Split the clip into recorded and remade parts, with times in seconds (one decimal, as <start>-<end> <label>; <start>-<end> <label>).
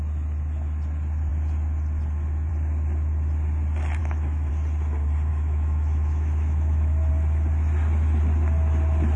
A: 0.0-4.0 recorded; 4.0-4.5 remade; 4.5-5.3 recorded; 5.3-7.1 remade; 7.1-9.2 recorded